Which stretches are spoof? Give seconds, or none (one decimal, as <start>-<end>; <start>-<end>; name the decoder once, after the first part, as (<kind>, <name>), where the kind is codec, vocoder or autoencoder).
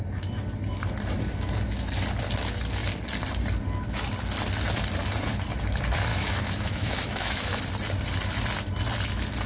6.1-7.6 (autoencoder, DAC-VAE)